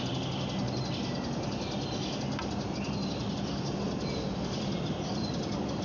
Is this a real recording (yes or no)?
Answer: yes